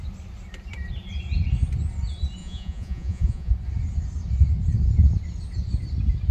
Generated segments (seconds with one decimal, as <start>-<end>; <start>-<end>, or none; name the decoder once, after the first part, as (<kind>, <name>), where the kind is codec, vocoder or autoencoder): 2.4-3.5 (vocoder, Vocos)